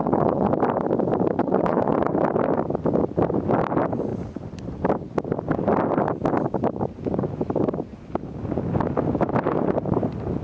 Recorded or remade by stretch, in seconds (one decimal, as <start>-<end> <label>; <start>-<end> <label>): 0.0-0.5 remade; 0.5-1.4 recorded; 1.4-2.1 remade; 2.1-10.4 recorded